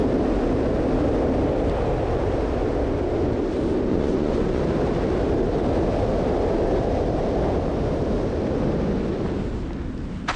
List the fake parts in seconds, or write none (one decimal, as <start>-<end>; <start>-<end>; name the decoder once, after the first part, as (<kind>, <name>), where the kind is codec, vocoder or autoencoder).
3.9-4.6 (vocoder, Vocos)